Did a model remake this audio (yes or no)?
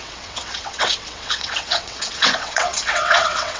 yes